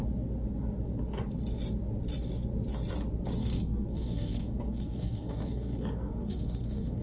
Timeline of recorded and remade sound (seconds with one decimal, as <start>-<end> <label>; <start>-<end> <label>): 0.0-3.4 recorded; 3.4-7.0 remade

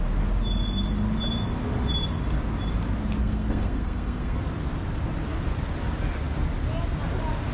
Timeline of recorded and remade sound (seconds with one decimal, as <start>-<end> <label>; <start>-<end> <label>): 0.0-3.2 recorded; 3.2-4.4 remade; 4.4-7.5 recorded